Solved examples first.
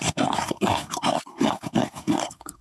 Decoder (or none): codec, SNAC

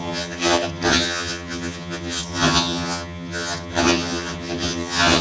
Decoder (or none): vocoder, HiFi-GAN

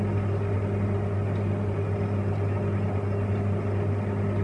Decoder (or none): none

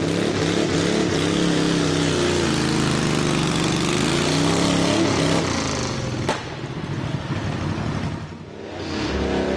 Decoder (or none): none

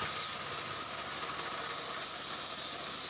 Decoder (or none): none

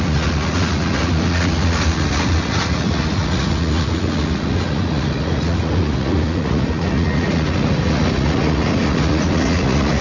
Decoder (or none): vocoder, Vocos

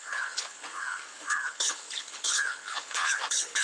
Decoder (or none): codec, HILCodec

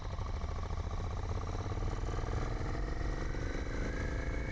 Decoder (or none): none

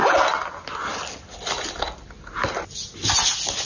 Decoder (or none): none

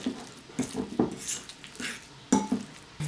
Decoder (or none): none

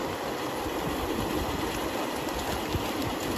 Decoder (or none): vocoder, BigVGAN v2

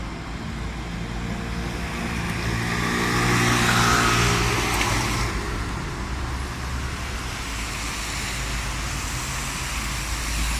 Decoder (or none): none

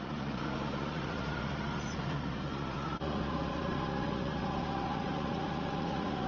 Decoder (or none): vocoder, Vocos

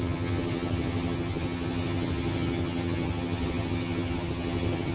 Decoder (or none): vocoder, HiFi-GAN